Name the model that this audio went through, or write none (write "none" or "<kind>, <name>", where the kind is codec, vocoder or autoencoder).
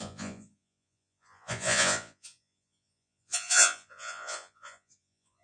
vocoder, Vocos